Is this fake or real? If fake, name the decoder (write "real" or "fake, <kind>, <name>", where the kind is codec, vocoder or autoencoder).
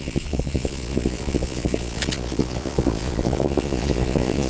fake, vocoder, Vocos